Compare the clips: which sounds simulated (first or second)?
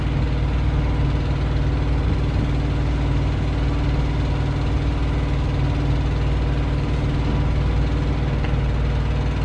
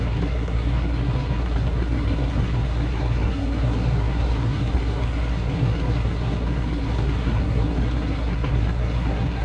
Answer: second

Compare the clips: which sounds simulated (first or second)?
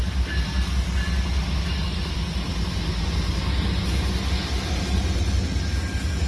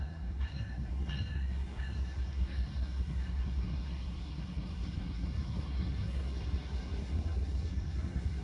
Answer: second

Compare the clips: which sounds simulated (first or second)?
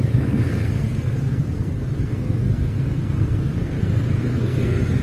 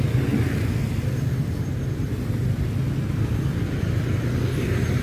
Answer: first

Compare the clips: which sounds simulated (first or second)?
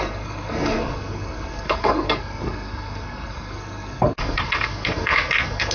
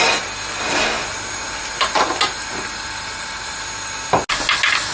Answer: first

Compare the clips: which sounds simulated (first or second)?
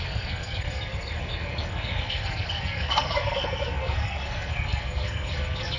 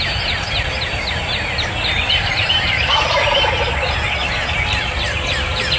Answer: first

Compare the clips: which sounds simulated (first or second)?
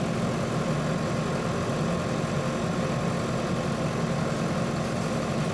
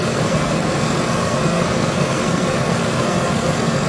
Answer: second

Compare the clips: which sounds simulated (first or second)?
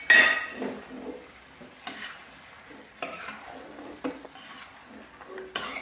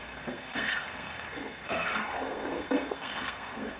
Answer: second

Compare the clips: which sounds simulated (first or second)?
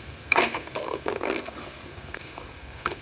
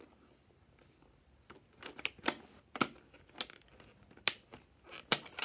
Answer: first